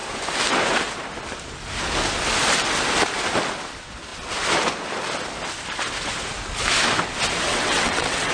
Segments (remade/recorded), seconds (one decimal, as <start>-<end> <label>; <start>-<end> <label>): 0.0-7.5 recorded; 7.5-8.3 remade

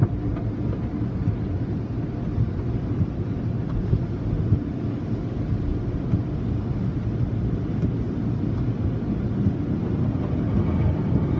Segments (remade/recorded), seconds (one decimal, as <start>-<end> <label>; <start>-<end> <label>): 0.0-11.4 recorded

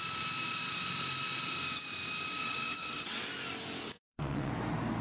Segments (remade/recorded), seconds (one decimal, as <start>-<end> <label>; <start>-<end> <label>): 0.0-2.4 recorded; 2.4-3.2 remade; 3.2-3.8 recorded; 3.8-4.5 remade; 4.5-5.0 recorded

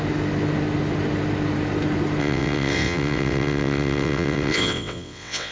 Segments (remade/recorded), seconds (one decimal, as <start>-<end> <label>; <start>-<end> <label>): 0.0-2.2 recorded; 2.2-5.5 remade

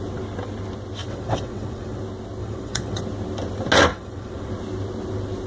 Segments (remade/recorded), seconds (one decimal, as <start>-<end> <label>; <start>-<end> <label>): 0.0-1.0 recorded; 1.0-2.0 remade; 2.0-2.4 recorded; 2.4-3.0 remade; 3.0-3.9 recorded; 3.9-4.5 remade; 4.5-5.5 recorded

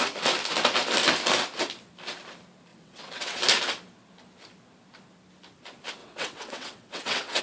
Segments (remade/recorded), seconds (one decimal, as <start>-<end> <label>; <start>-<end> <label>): 0.0-2.7 recorded; 2.7-3.4 remade; 3.4-6.0 recorded; 6.0-7.4 remade

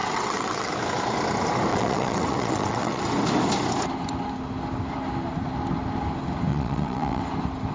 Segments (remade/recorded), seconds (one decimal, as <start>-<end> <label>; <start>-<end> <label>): 0.0-0.7 remade; 0.7-1.7 recorded; 1.7-3.0 remade; 3.0-6.5 recorded; 6.5-7.2 remade; 7.2-7.7 recorded